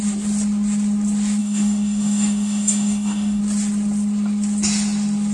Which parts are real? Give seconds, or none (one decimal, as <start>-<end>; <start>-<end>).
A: 0.0-1.4; 3.4-5.3